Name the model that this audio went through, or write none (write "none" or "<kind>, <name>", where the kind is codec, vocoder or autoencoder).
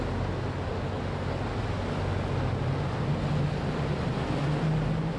none